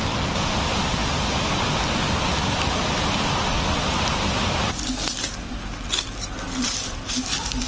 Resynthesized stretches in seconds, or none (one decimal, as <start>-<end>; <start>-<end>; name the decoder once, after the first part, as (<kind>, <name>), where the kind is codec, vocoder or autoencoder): none